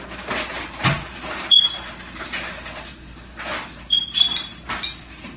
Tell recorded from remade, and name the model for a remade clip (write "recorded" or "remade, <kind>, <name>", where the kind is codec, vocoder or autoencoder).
recorded